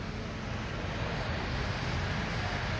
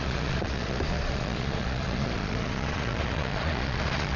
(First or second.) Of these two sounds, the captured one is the first